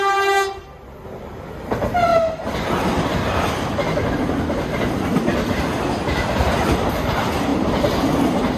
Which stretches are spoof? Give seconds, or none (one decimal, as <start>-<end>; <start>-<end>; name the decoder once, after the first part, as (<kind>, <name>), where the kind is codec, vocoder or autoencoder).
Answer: none